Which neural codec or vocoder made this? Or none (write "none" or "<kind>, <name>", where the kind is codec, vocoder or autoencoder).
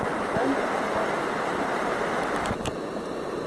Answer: none